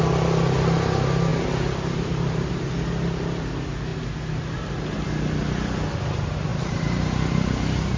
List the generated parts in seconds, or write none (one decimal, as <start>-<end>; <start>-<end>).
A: 1.3-2.5; 6.5-8.0